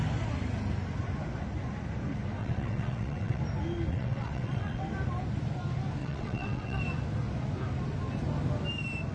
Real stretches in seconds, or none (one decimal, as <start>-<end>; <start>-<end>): 0.0-2.4; 3.4-3.9; 4.8-6.0; 6.8-9.1